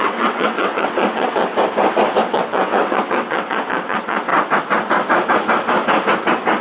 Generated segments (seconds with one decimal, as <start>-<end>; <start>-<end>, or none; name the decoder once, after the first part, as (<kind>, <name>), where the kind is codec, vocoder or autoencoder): 0.0-1.5 (vocoder, WaveNeXt); 2.2-4.3